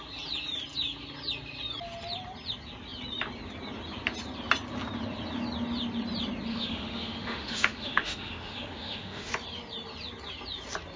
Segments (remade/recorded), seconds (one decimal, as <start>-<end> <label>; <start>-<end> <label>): 0.0-6.5 recorded; 6.5-9.3 remade; 9.3-11.0 recorded